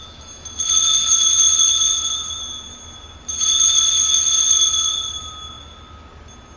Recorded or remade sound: recorded